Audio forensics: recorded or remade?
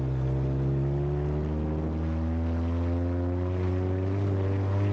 recorded